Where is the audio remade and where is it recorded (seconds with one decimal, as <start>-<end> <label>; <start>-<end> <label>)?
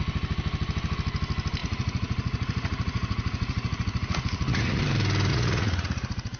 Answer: 0.0-1.6 recorded; 1.6-4.8 remade; 4.8-5.3 recorded; 5.3-6.4 remade